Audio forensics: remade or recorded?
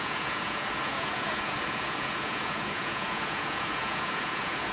remade